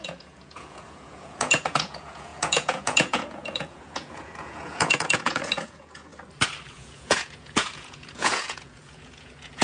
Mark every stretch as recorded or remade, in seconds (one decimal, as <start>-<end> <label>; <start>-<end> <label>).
0.0-6.1 remade; 6.1-6.7 recorded; 6.7-9.6 remade